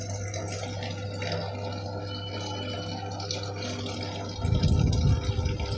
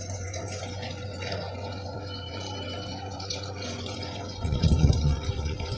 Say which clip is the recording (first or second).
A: first